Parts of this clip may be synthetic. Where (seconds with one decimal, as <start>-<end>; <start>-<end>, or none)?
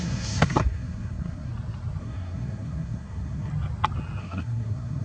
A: 0.0-1.5; 2.0-3.5; 4.2-5.0